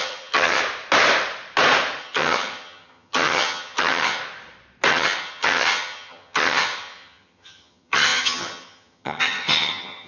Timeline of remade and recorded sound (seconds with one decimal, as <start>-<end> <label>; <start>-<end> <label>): 0.0-0.6 remade; 0.6-2.0 recorded; 2.0-4.2 remade; 4.2-4.9 recorded; 4.9-10.1 remade